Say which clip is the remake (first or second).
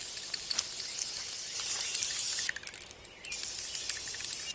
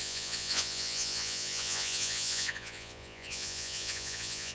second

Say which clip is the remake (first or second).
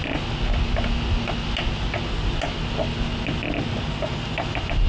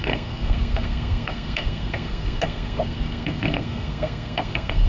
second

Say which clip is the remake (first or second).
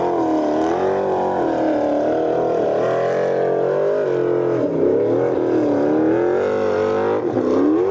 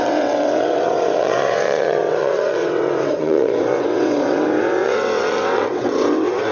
second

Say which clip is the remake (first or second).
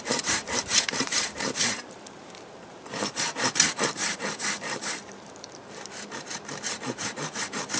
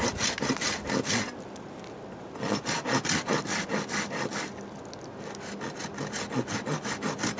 first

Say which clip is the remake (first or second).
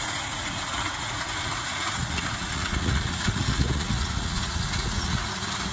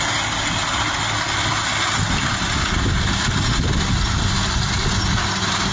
first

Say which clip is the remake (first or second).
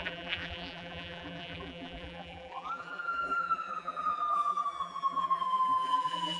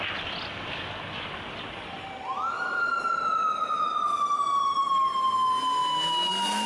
first